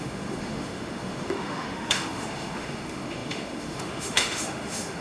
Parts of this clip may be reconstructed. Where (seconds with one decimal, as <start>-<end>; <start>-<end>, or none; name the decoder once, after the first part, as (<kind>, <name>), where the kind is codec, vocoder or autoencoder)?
0.0-5.0 (autoencoder, DAC-VAE)